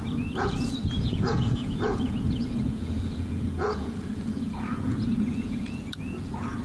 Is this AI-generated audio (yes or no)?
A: yes